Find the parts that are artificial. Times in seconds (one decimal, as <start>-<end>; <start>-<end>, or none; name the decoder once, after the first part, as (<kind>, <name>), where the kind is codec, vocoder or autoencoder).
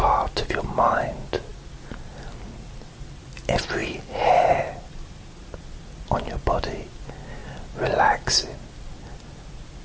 none